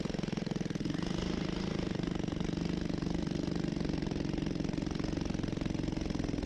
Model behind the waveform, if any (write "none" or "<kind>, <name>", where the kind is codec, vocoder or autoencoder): none